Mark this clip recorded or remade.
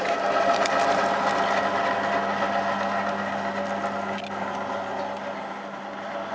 recorded